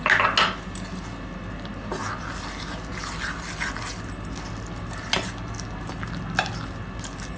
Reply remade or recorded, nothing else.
recorded